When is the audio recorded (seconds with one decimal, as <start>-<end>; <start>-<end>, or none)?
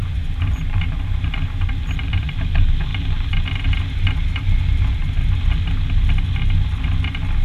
2.3-7.4